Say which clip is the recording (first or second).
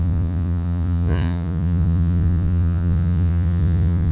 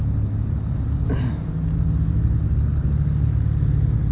second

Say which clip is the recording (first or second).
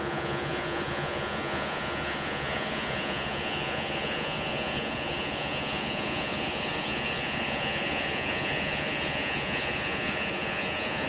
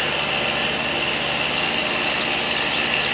second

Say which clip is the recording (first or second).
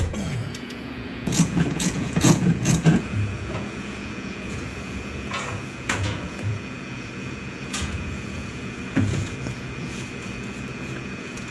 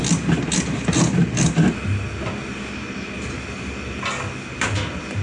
second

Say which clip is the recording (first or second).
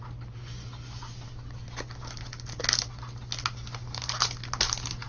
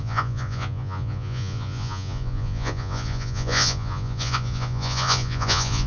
first